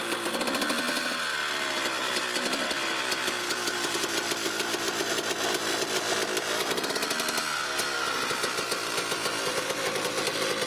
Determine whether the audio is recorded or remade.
recorded